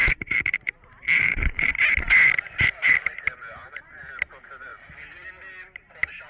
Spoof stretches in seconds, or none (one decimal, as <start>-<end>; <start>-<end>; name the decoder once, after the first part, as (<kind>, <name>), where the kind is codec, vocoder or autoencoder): 0.0-1.7 (vocoder, BigVGAN v2)

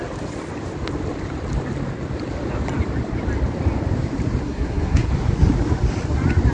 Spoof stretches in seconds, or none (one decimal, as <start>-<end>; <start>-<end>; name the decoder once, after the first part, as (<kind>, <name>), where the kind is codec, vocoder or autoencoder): 4.4-5.1 (codec, SNAC)